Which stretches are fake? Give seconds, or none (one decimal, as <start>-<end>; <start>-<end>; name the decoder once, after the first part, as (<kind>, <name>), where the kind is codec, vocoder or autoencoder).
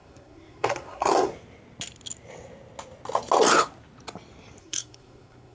0.0-1.3 (codec, SNAC); 4.6-5.5